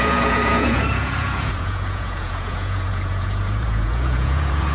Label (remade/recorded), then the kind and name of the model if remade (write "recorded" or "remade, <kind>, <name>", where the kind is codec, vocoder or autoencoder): remade, vocoder, Vocos